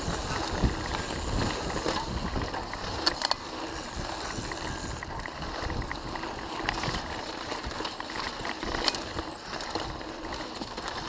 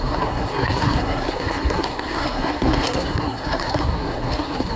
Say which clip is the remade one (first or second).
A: second